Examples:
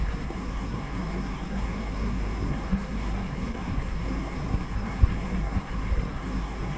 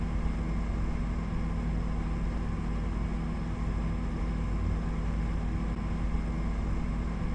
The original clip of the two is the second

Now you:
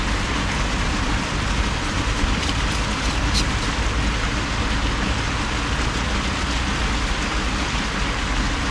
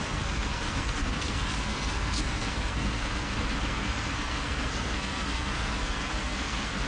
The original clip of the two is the first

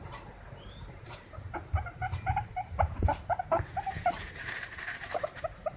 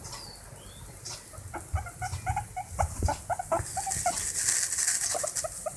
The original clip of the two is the second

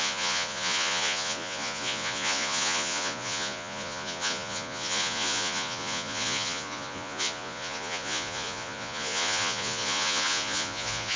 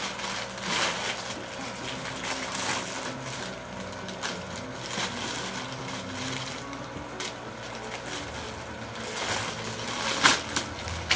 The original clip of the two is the second